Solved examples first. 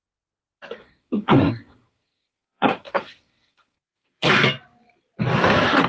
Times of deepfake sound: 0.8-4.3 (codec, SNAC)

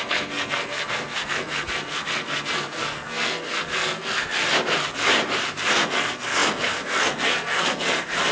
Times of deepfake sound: 0.0-4.4 (codec, SNAC); 5.7-8.3